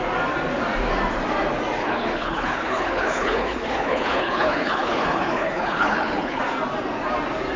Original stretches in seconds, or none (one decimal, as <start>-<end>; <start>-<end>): 0.0-1.8; 6.4-7.6